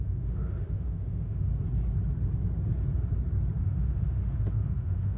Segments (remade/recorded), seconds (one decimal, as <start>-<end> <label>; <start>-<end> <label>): 0.0-1.5 remade; 1.5-3.6 recorded; 3.6-5.2 remade